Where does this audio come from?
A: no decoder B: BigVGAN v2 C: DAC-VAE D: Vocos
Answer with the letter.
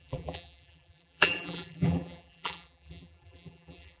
B